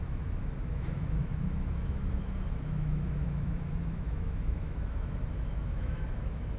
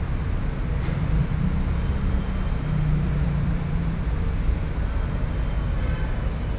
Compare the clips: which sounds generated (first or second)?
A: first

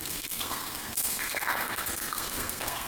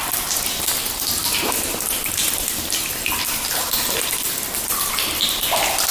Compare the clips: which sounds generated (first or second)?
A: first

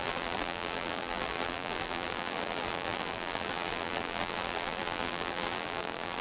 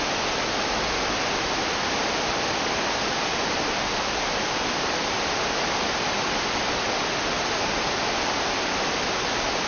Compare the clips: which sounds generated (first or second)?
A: first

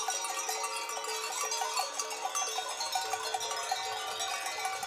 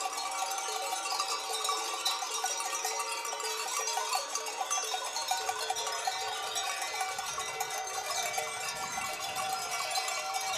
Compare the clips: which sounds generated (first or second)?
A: second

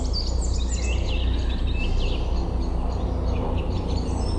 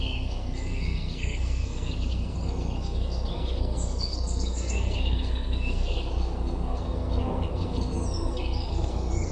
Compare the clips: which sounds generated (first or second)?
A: second